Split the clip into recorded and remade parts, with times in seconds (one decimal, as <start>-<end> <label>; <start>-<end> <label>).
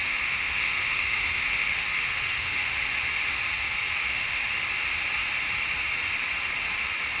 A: 0.0-3.0 remade; 3.0-4.0 recorded; 4.0-4.5 remade; 4.5-7.2 recorded